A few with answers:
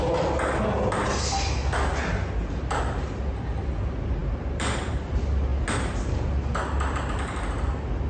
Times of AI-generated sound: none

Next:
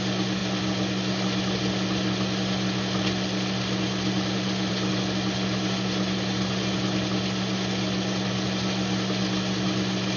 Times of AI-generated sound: none

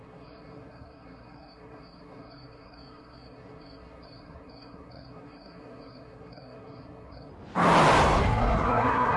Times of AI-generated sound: 0.0-7.3 (codec, SNAC); 8.2-9.2